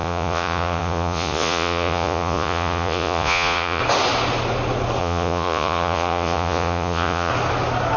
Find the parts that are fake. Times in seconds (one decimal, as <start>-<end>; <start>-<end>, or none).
0.0-3.8; 5.0-7.3